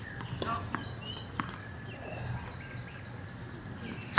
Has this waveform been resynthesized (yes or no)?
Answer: no